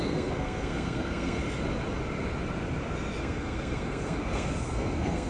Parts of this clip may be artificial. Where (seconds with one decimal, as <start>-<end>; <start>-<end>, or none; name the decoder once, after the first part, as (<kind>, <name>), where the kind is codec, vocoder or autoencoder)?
0.0-1.4 (codec, SNAC); 3.2-5.3